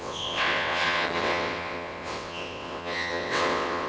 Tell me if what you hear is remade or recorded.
remade